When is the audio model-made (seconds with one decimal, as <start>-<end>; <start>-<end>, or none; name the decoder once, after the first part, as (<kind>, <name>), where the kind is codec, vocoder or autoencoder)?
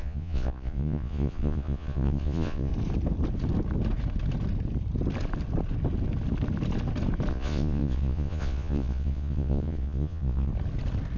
0.0-2.7 (vocoder, Vocos); 7.3-10.5